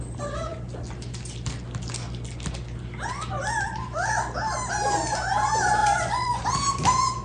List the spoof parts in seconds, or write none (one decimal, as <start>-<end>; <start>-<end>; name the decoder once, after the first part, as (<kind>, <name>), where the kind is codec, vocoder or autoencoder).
5.8-6.4 (vocoder, Vocos)